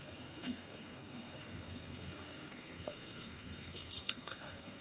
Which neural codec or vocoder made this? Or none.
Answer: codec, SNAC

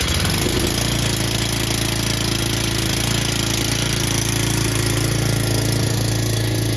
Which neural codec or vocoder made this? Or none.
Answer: none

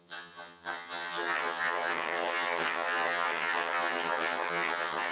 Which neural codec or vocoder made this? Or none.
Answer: vocoder, HiFi-GAN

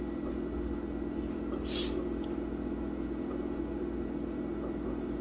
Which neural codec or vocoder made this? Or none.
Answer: none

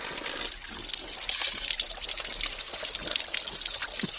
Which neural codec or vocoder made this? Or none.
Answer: none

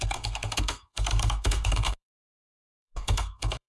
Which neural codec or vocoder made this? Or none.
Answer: codec, SNAC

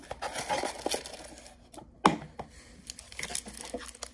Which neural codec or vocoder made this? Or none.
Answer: none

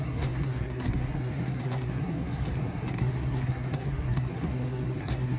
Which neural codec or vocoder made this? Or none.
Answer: codec, SNAC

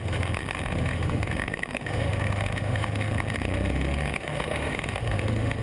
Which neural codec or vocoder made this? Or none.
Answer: autoencoder, DAC-VAE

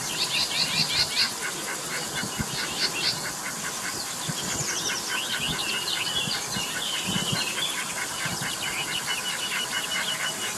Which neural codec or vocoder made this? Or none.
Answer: none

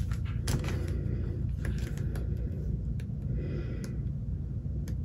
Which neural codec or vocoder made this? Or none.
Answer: none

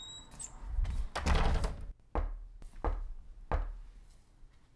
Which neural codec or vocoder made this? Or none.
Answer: none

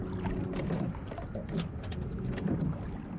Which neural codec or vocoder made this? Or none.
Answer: none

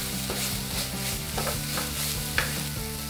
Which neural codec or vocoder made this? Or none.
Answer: none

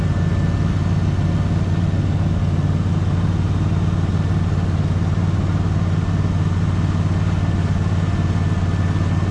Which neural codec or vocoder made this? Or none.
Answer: none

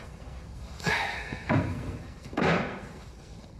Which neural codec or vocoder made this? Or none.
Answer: codec, SNAC